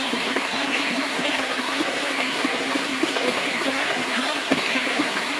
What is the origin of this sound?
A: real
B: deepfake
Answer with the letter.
B